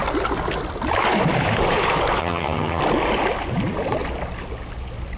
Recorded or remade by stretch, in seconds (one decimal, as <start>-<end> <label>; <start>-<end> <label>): 0.0-2.2 recorded; 2.2-2.8 remade; 2.8-5.2 recorded